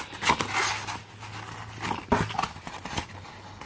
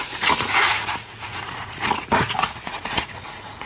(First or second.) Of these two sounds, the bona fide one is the first